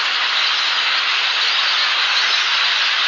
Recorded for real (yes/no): yes